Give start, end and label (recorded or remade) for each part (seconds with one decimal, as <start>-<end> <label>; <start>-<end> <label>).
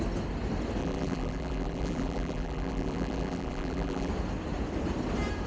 0.0-0.8 recorded; 0.8-4.1 remade; 4.1-5.5 recorded